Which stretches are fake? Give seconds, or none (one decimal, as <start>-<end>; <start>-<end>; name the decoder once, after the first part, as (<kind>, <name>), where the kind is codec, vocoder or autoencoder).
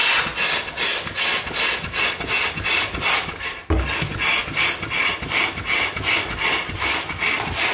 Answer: none